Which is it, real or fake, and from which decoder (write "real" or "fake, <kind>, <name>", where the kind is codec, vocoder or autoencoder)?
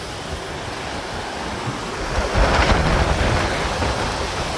real